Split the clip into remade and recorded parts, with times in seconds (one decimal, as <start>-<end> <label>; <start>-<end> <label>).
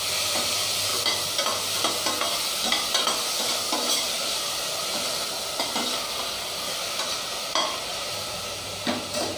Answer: 0.0-0.9 recorded; 0.9-1.9 remade; 1.9-7.9 recorded; 7.9-9.4 remade